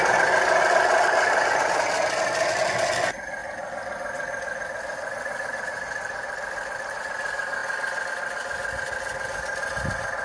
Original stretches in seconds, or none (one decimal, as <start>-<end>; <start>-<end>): 0.0-10.2